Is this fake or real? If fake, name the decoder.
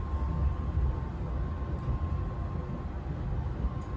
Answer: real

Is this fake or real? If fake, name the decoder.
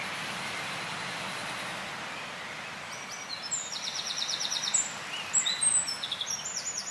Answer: real